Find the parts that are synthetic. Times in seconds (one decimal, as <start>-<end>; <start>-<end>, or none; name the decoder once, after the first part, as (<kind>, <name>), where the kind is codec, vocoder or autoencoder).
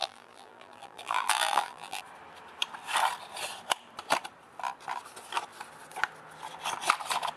0.0-2.0 (vocoder, BigVGAN v2)